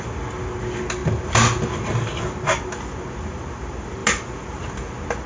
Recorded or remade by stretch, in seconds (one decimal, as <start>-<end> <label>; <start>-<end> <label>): 0.0-5.3 recorded